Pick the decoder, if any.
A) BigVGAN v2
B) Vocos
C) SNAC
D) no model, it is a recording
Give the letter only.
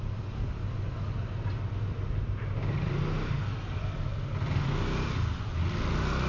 D